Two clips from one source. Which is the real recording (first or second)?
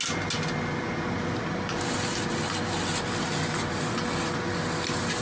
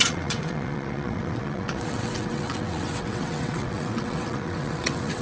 first